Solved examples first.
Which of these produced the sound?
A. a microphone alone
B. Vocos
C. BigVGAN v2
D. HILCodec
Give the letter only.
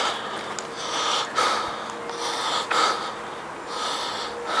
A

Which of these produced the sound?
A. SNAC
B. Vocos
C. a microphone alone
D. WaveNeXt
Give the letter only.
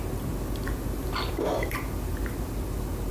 C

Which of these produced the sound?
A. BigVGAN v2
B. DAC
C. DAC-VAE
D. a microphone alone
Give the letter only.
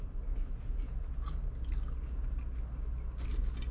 D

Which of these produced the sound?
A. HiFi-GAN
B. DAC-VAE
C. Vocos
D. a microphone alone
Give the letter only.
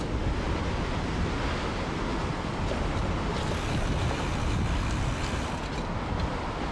D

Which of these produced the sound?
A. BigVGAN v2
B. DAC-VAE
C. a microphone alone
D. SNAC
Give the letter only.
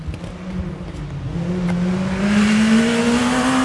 C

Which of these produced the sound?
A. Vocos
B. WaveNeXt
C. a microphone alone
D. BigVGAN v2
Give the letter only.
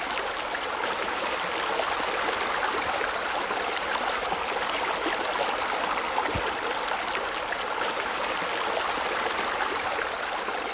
C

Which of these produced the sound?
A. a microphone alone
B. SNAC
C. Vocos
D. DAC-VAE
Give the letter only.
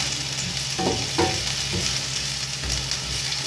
A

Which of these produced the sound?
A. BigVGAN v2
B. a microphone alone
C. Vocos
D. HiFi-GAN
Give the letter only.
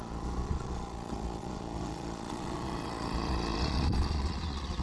C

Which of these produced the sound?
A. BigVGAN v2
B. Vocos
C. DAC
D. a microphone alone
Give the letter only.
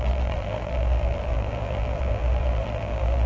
A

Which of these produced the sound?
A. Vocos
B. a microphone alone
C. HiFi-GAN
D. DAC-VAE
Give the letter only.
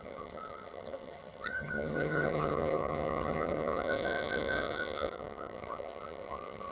C